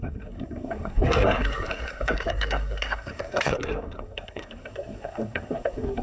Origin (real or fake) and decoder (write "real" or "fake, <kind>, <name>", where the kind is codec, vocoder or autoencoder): fake, codec, SNAC